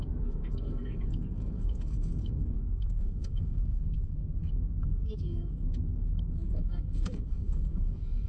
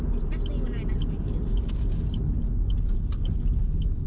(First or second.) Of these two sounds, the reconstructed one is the first